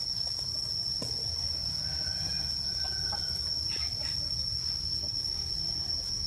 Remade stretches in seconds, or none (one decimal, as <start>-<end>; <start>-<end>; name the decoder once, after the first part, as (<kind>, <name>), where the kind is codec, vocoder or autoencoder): 5.0-5.5 (codec, SNAC)